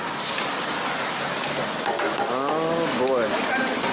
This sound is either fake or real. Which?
real